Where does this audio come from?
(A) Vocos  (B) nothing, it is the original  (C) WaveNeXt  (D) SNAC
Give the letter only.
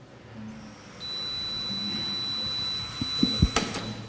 B